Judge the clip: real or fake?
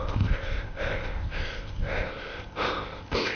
fake